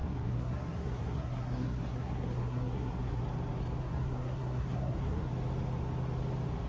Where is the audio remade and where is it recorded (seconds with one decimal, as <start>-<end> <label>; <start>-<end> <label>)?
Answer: 0.0-3.2 remade; 3.2-3.8 recorded; 3.8-5.3 remade; 5.3-6.7 recorded